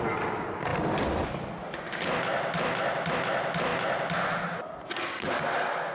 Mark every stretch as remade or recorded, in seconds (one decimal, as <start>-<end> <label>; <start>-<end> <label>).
0.0-5.9 recorded